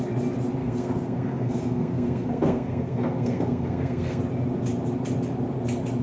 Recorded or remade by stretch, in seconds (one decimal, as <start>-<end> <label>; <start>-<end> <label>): 0.0-0.6 recorded; 0.6-4.2 remade; 4.2-6.0 recorded